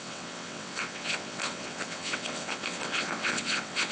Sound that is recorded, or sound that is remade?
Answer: remade